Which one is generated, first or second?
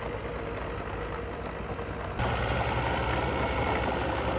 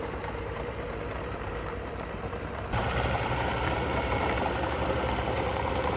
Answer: second